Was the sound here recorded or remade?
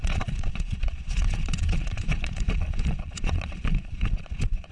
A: remade